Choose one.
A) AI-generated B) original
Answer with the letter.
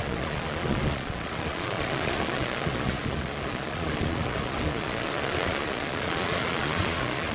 A